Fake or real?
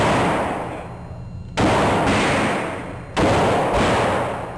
real